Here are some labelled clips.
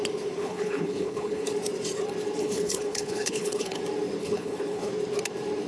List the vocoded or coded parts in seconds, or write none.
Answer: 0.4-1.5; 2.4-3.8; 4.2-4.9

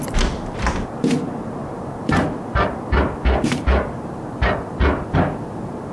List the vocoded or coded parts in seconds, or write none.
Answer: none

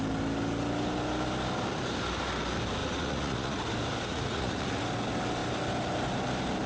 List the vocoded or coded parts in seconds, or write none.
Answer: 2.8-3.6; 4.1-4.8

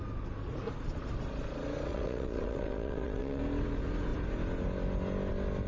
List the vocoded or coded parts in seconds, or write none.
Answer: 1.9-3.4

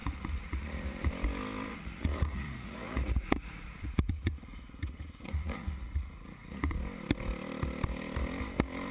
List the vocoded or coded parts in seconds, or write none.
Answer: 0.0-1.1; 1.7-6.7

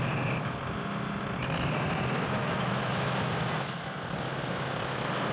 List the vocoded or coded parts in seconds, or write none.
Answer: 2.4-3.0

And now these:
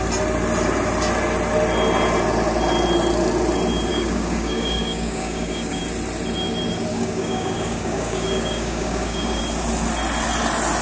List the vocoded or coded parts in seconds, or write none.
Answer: 3.9-5.8; 6.9-9.4

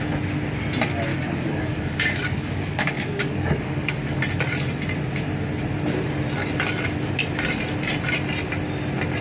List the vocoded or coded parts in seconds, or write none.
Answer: 1.1-4.2